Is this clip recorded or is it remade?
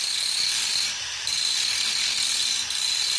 recorded